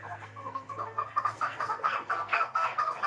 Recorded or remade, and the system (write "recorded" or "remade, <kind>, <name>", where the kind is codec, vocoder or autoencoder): remade, codec, SNAC